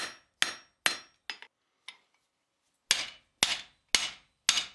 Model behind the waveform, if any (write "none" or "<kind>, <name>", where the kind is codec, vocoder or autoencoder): none